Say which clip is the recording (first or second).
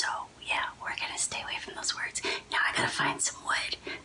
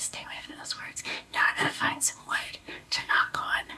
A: first